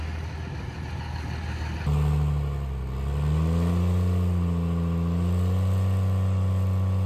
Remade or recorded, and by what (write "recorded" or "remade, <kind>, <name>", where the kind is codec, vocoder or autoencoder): recorded